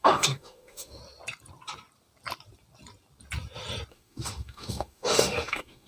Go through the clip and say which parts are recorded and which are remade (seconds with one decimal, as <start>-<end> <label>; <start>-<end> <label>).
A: 0.0-1.0 remade; 1.0-3.9 recorded; 3.9-5.9 remade